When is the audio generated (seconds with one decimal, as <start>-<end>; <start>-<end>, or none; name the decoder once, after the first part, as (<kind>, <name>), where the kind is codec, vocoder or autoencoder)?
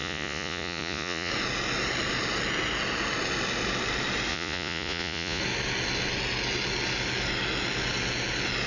0.0-1.3 (vocoder, Vocos); 4.3-5.4